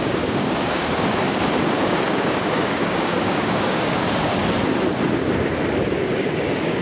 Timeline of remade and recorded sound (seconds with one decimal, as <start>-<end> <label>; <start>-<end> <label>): 0.0-4.4 remade; 4.4-5.9 recorded; 5.9-6.8 remade